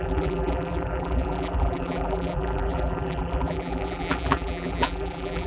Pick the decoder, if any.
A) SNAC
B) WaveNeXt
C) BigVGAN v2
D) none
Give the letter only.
C